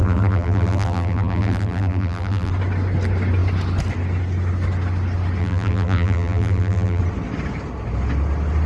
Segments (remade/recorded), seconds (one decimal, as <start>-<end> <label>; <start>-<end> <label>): 0.0-2.5 remade; 2.5-5.4 recorded; 5.4-7.0 remade; 7.0-8.7 recorded